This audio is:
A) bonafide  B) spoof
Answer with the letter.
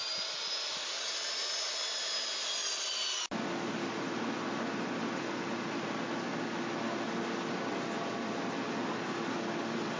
A